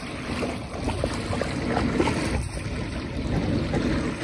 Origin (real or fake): real